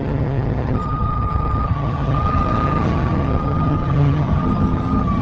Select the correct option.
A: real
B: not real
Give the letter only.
B